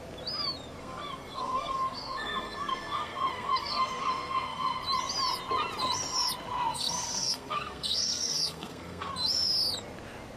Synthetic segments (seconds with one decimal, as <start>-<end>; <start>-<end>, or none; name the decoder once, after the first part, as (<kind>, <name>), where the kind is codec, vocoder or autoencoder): 0.8-4.8 (codec, SNAC); 6.7-9.1